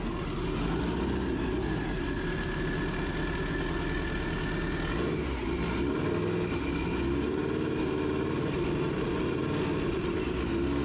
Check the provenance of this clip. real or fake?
real